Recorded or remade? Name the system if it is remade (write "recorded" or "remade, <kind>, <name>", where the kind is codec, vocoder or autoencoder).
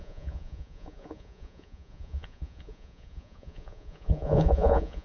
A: remade, vocoder, Vocos